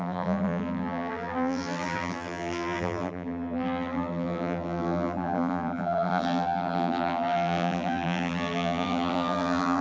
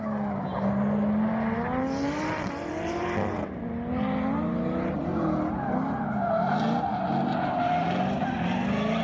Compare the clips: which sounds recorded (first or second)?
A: second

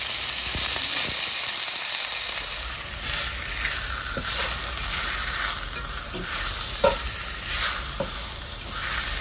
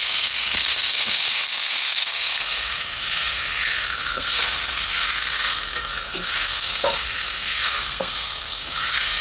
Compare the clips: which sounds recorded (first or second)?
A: first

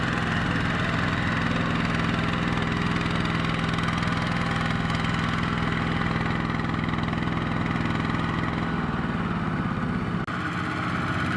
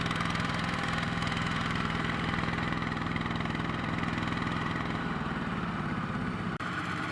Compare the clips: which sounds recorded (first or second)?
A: first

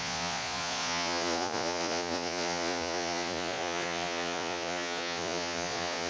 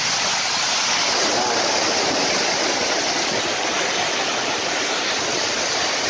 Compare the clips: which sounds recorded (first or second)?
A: second